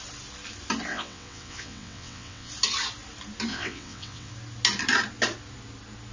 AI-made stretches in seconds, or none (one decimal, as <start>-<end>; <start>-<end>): 0.9-2.5; 3.5-4.3